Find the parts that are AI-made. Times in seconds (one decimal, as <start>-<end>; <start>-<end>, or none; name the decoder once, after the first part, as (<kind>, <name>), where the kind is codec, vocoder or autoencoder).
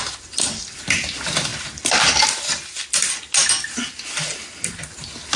none